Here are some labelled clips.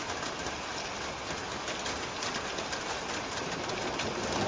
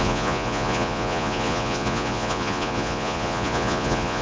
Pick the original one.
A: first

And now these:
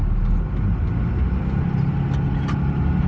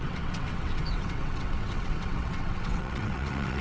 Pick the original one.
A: first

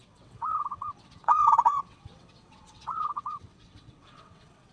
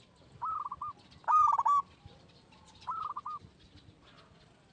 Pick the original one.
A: second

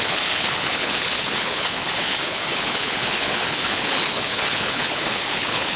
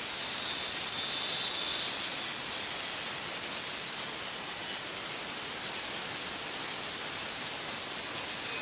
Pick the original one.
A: second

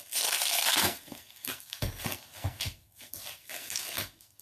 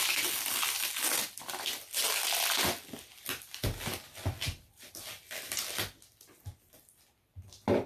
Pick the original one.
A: second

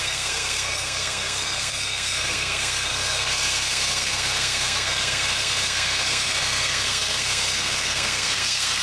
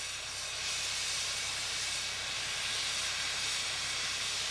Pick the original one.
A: second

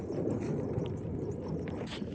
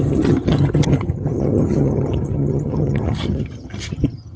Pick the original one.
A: first